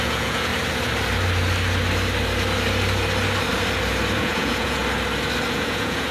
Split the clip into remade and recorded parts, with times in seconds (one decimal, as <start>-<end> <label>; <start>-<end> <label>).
0.0-0.5 remade; 0.5-4.2 recorded; 4.2-4.8 remade; 4.8-5.5 recorded; 5.5-6.1 remade